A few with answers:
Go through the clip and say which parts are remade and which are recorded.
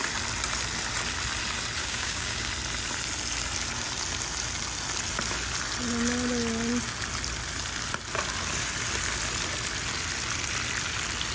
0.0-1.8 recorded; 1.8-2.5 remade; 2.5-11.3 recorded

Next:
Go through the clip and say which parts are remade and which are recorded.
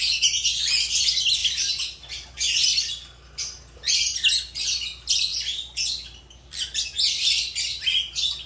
0.0-8.5 recorded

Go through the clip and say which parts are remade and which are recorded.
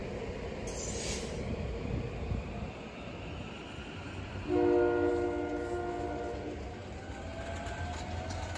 0.0-8.6 recorded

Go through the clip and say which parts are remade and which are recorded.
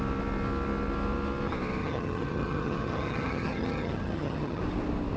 0.0-1.8 recorded; 1.8-4.6 remade; 4.6-5.2 recorded